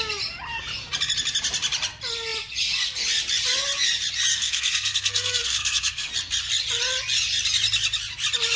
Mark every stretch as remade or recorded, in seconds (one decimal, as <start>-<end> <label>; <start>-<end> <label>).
0.0-4.3 recorded; 4.3-6.1 remade; 6.1-8.6 recorded